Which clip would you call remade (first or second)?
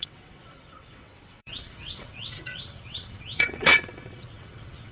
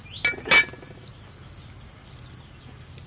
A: first